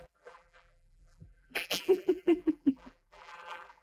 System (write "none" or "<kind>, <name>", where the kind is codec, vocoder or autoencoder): vocoder, BigVGAN v2